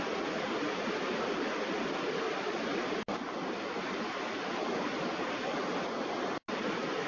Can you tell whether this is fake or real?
real